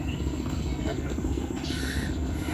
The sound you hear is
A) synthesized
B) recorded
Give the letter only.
A